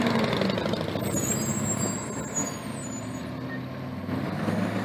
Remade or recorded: recorded